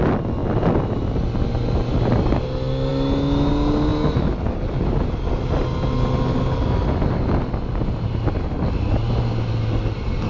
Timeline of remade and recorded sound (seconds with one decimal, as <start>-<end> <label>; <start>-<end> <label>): 0.0-10.3 recorded